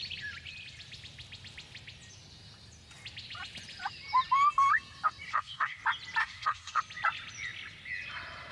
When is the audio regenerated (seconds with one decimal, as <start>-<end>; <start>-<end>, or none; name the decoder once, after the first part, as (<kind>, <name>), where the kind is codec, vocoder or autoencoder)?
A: 5.3-5.8 (codec, SNAC); 6.2-6.8